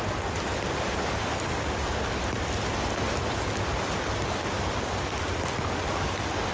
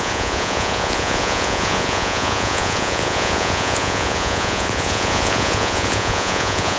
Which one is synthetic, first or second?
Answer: second